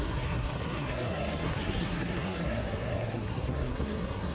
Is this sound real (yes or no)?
no